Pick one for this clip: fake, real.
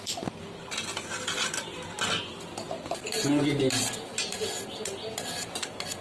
real